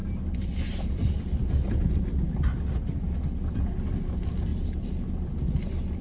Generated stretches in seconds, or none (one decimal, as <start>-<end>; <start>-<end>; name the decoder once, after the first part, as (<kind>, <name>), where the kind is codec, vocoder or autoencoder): 0.0-3.6 (vocoder, BigVGAN v2)

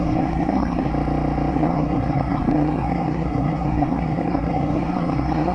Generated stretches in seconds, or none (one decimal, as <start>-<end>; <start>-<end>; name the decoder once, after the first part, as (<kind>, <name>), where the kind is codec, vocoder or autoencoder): 0.0-0.9 (codec, SNAC); 1.5-5.5

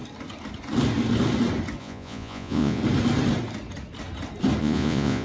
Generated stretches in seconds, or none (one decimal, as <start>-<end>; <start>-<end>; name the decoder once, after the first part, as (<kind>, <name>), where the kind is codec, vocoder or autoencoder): 1.8-2.8 (vocoder, Vocos); 4.6-5.2

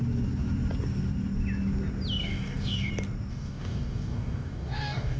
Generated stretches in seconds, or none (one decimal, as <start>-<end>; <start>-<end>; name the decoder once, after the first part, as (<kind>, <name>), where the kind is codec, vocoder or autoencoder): 2.2-2.9 (codec, DAC); 3.3-5.2

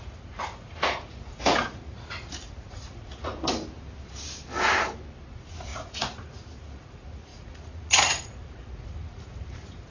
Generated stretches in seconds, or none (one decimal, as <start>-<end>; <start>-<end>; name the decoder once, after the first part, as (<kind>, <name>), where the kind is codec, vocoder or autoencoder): 0.0-3.3 (vocoder, Vocos); 5.3-9.9

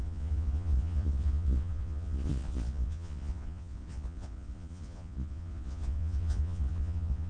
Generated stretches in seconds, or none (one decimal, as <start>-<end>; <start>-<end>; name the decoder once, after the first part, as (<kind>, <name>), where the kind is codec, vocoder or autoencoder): 0.0-7.3 (vocoder, Vocos)

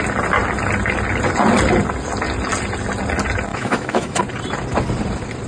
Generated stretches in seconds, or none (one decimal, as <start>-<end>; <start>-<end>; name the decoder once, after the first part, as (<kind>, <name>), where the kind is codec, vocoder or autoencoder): 3.5-4.2 (autoencoder, DAC-VAE)

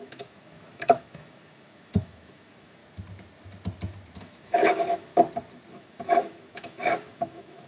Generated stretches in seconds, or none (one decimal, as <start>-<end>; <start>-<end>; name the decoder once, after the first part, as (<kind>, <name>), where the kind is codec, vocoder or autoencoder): 0.0-2.8 (autoencoder, DAC-VAE); 4.2-5.1; 5.7-7.7